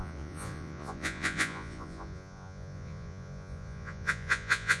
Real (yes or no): no